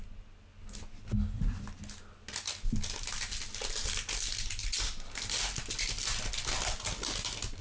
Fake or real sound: real